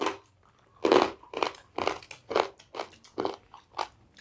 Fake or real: real